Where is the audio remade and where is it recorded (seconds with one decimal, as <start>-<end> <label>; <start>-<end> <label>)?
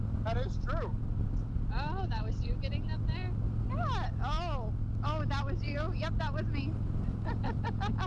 0.0-8.1 recorded